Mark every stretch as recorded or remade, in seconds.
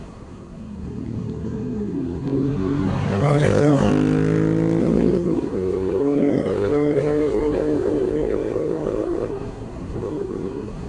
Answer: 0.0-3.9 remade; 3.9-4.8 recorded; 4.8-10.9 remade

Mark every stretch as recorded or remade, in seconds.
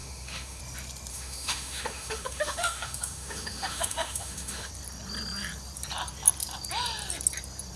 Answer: 0.0-0.6 remade; 0.6-1.1 recorded; 1.1-4.7 remade; 4.7-7.8 recorded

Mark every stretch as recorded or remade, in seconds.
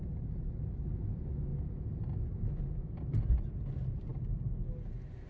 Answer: 0.0-5.3 recorded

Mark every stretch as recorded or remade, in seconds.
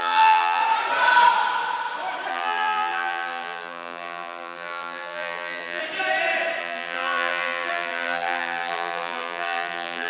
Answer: 0.0-0.6 remade; 0.6-2.3 recorded; 2.3-5.8 remade; 5.8-6.6 recorded; 6.6-10.1 remade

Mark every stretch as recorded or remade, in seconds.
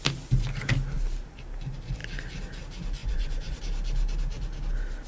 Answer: 0.0-3.0 recorded; 3.0-3.6 remade; 3.6-5.1 recorded